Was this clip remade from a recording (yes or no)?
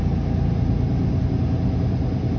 no